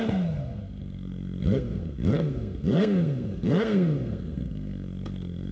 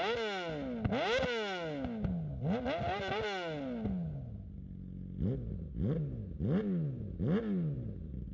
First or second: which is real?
second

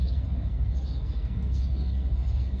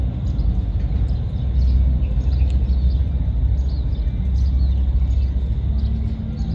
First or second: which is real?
second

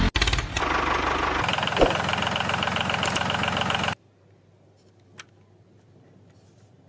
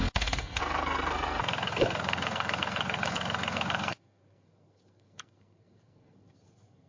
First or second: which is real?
first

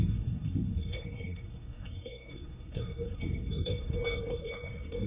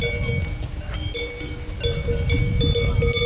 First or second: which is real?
second